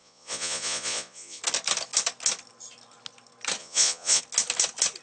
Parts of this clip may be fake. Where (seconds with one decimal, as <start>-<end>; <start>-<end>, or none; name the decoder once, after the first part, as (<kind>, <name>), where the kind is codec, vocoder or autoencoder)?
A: 0.0-1.4 (vocoder, Vocos); 3.6-4.2

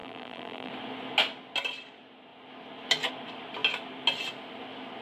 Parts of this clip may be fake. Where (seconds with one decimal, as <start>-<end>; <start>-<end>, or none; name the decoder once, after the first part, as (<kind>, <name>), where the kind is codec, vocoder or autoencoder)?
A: 0.0-0.7 (vocoder, BigVGAN v2)

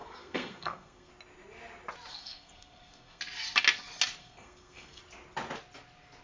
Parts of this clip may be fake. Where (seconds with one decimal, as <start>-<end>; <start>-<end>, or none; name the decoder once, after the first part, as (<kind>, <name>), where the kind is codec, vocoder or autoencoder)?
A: 0.0-1.1 (codec, SNAC); 2.1-3.2; 4.2-5.0

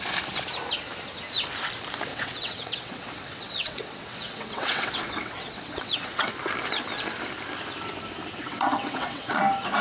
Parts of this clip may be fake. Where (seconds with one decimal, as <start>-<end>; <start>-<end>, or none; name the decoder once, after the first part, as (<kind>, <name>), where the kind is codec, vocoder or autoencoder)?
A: 2.1-6.3 (vocoder, WaveNeXt); 8.4-9.4

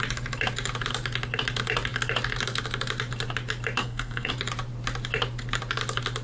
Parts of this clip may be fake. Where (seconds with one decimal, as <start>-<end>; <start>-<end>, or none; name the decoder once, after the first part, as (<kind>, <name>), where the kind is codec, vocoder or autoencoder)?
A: 3.8-4.3 (codec, SNAC)